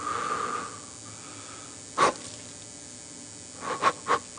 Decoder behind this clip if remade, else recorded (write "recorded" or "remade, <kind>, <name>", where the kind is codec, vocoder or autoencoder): recorded